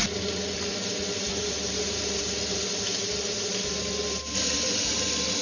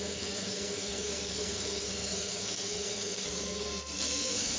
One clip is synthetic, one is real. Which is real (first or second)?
first